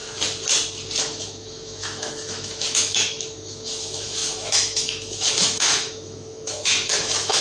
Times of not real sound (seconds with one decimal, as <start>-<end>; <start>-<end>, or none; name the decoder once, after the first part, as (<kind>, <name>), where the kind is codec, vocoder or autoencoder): 1.0-7.4 (autoencoder, DAC-VAE)